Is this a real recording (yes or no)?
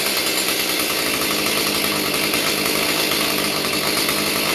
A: yes